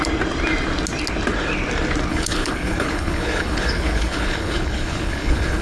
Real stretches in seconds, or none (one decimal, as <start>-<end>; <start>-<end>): 0.0-2.1